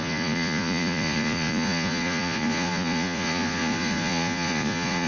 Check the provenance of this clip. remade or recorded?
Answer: remade